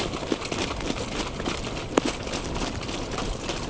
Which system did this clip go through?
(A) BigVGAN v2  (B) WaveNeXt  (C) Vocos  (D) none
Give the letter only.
D